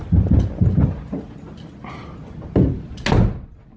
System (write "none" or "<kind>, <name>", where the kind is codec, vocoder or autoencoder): none